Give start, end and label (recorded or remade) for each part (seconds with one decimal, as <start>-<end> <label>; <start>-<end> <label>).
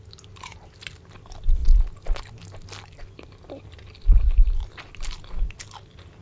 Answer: 0.0-6.2 recorded